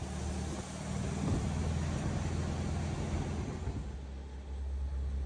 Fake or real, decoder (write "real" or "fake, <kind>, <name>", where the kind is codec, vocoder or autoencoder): real